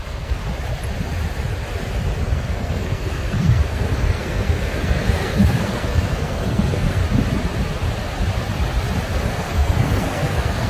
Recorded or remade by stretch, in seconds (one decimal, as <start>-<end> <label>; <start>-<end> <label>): 0.0-0.4 remade; 0.4-2.3 recorded; 2.3-7.0 remade; 7.0-9.3 recorded; 9.3-10.7 remade